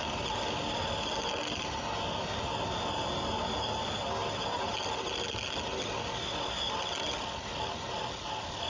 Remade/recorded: recorded